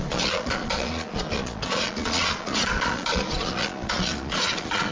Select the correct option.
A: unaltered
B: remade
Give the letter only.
B